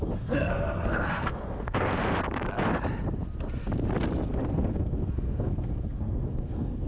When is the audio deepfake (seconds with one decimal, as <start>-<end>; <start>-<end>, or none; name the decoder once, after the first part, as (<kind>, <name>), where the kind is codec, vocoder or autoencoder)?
0.0-1.9 (codec, SNAC); 4.5-6.9